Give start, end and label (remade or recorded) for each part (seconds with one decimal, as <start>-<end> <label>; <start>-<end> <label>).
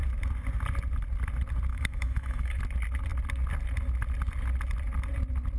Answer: 0.0-1.7 recorded; 1.7-2.6 remade; 2.6-5.6 recorded